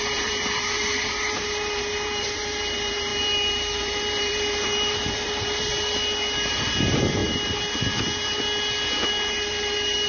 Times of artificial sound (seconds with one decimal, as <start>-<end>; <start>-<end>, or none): 0.0-5.7; 6.5-7.2; 9.3-10.1